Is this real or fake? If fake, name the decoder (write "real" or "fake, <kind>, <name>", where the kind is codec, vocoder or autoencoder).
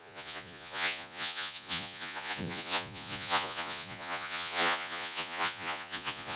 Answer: fake, vocoder, Vocos